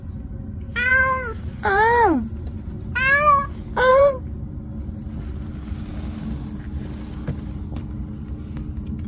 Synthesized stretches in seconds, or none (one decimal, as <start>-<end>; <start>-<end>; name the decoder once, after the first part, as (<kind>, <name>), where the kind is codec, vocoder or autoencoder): 0.9-2.3 (vocoder, BigVGAN v2); 3.9-4.6